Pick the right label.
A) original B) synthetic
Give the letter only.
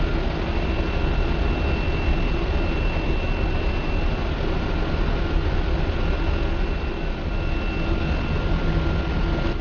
A